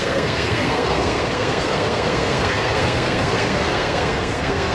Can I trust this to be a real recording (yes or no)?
no